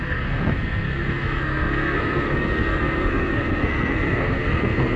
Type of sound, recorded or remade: remade